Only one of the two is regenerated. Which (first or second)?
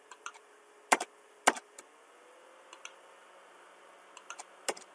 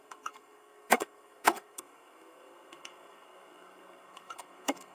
second